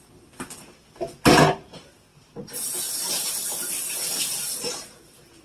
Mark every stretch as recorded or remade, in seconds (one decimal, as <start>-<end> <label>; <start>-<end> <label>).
0.0-5.4 recorded